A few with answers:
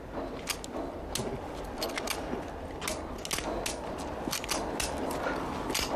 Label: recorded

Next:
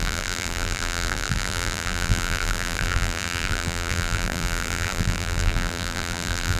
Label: remade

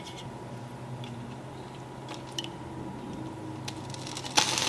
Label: recorded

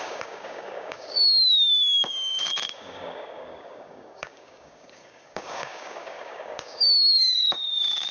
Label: remade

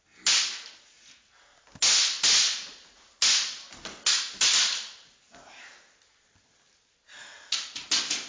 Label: recorded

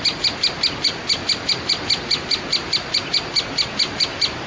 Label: recorded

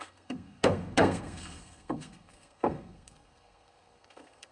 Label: remade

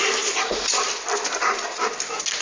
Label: recorded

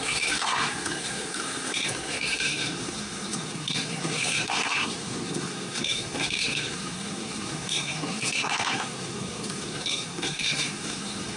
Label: remade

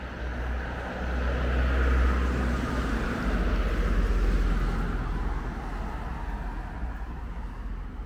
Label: recorded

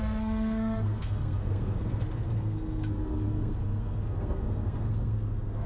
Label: remade